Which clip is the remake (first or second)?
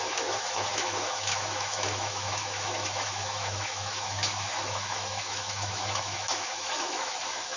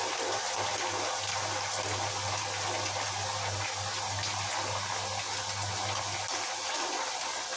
first